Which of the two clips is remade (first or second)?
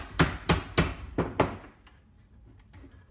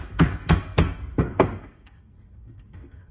second